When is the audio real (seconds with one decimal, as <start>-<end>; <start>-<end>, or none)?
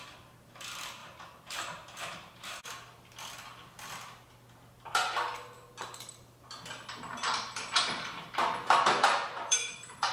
0.0-1.0; 2.6-7.1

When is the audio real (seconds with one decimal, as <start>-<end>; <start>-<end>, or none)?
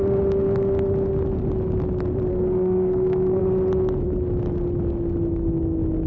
0.0-2.3; 3.4-6.1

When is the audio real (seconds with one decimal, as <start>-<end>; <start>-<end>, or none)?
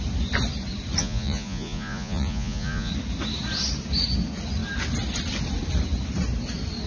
0.0-1.0; 2.9-6.9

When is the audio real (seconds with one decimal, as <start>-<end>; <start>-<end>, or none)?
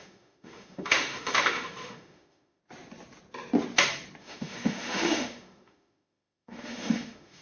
2.6-4.2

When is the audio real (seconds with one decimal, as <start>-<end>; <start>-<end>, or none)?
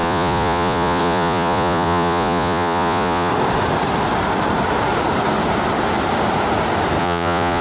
3.3-7.0